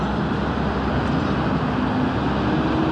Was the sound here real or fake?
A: real